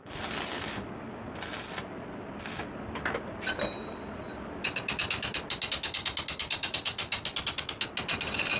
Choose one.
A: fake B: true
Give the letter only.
B